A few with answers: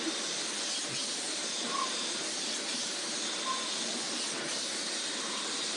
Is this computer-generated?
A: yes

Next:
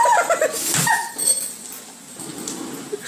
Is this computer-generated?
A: no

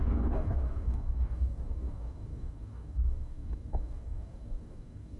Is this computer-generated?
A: yes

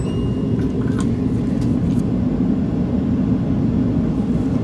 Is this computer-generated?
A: no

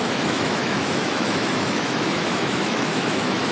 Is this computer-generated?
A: yes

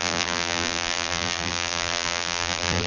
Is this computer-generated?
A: yes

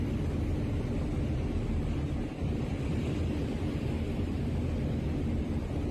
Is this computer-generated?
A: no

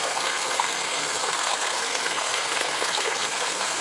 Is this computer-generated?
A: yes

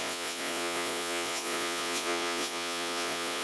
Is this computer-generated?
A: yes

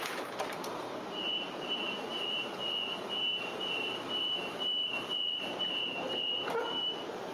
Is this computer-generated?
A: yes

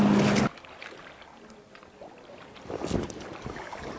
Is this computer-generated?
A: no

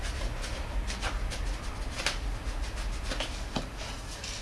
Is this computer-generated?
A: no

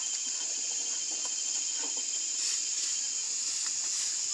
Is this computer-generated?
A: no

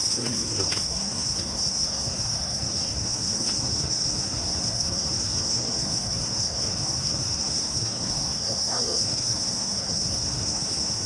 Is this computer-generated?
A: yes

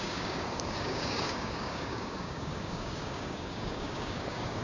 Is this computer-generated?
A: yes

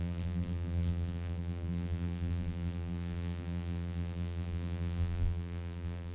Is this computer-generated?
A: yes